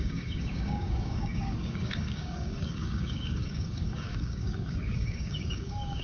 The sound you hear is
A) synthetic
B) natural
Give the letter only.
A